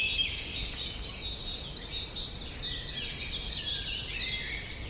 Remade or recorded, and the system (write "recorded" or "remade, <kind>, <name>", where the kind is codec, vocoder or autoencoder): recorded